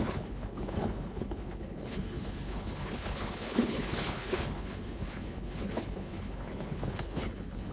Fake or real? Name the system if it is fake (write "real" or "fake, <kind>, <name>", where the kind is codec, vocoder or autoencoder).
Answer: fake, codec, HILCodec